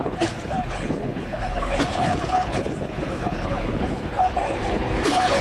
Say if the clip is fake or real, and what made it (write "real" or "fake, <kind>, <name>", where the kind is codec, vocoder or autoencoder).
fake, codec, HILCodec